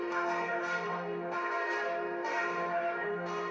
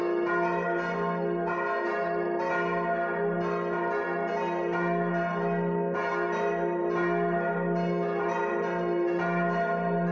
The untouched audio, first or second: second